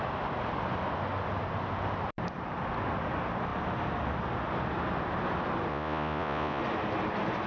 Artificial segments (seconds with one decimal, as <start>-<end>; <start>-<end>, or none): 5.7-6.6